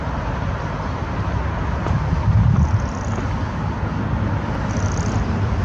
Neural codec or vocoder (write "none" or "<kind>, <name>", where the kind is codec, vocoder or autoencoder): none